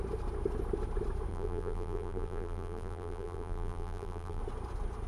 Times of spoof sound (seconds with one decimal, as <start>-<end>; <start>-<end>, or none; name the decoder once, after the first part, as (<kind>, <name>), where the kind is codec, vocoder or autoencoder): 1.3-4.4 (vocoder, BigVGAN v2)